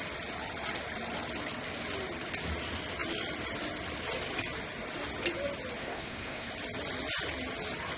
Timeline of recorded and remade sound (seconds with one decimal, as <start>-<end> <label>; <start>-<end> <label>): 0.0-5.8 recorded; 5.8-6.5 remade; 6.5-8.0 recorded